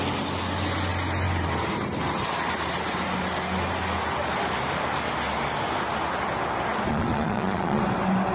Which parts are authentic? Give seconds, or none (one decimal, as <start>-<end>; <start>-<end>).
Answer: 0.0-6.9; 7.8-8.3

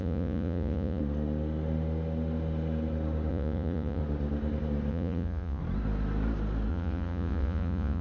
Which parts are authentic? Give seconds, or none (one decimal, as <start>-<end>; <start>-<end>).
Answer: 1.0-3.3; 4.0-4.9; 5.6-6.7

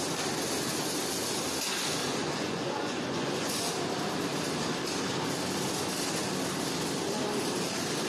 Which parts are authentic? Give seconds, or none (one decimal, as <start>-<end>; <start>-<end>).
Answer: 0.0-2.0; 3.7-8.1